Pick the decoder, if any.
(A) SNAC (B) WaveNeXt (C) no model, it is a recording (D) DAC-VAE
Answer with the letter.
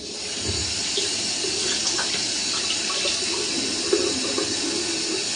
C